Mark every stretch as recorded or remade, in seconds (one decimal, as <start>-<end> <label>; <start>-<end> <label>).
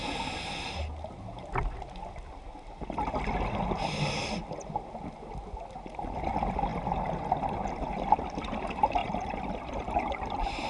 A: 0.0-9.0 recorded; 9.0-9.7 remade; 9.7-10.7 recorded